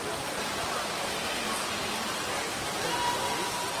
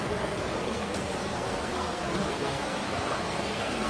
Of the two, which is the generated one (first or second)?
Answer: second